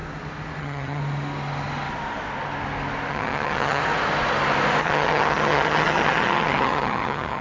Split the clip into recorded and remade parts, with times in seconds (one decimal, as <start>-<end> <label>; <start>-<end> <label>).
0.0-0.6 recorded; 0.6-1.0 remade; 1.0-3.1 recorded; 3.1-3.8 remade; 3.8-4.8 recorded; 4.8-7.4 remade